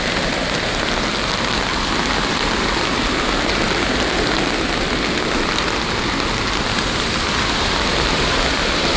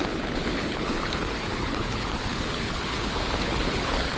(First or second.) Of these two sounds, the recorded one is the first